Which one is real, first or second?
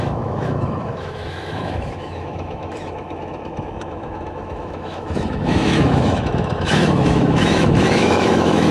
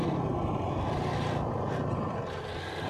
second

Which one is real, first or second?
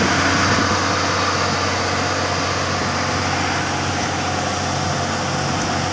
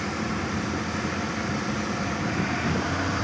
first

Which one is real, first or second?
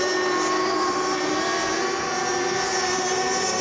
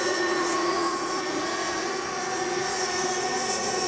first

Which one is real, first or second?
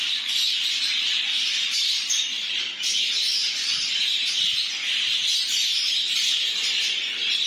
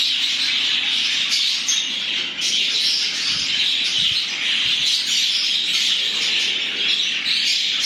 second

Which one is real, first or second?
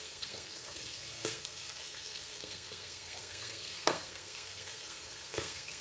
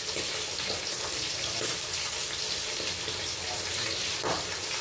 second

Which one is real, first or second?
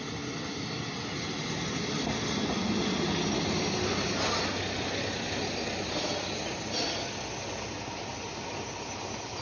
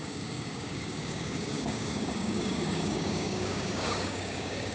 first